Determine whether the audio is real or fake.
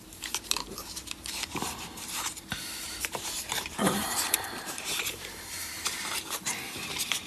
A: fake